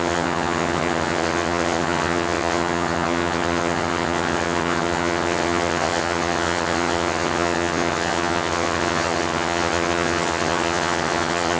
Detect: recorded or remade remade